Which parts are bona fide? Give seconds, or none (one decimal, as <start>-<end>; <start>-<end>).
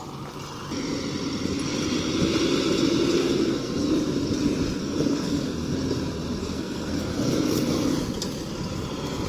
0.0-3.2; 3.9-4.8; 5.7-6.4; 7.9-9.3